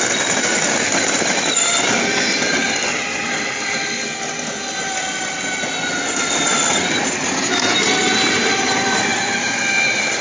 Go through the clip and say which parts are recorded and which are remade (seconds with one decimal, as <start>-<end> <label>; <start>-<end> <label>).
0.0-10.2 recorded